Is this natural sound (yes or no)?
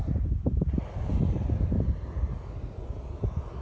yes